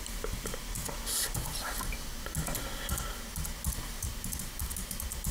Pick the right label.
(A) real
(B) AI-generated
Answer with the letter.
A